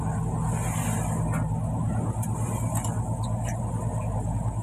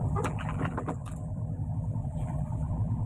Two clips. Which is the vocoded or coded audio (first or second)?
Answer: second